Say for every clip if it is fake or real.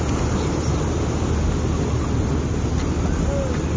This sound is real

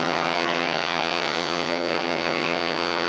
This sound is fake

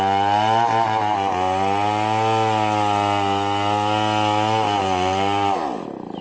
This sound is real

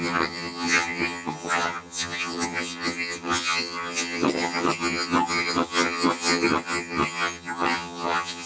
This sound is fake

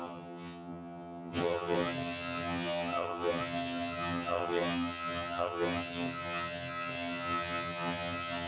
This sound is fake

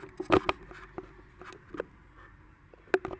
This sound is real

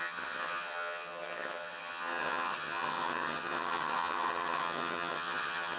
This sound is fake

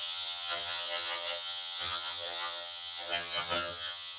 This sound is fake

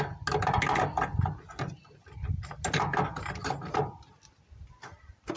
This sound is real